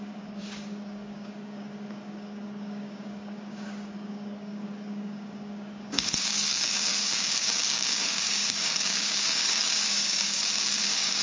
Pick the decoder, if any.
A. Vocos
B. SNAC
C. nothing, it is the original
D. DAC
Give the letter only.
D